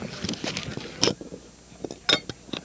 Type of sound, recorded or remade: recorded